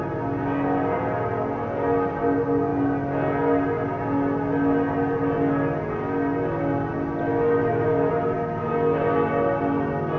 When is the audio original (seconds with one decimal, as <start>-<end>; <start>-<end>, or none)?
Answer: 0.0-7.6; 8.1-10.2